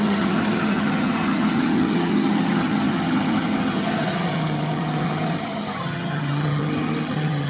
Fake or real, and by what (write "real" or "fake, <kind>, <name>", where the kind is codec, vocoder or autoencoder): fake, vocoder, HiFi-GAN